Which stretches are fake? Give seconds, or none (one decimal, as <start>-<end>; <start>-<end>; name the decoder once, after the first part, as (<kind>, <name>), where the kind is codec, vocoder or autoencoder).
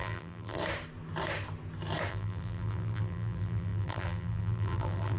0.0-0.6 (vocoder, BigVGAN v2); 2.1-5.2